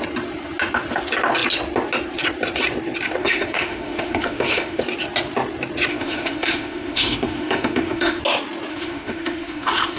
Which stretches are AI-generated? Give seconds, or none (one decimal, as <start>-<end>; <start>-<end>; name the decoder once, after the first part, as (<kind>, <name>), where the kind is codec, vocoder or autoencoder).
3.2-4.8 (autoencoder, DAC-VAE); 5.9-8.2; 8.7-10.0